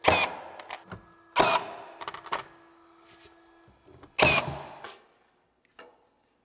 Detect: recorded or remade recorded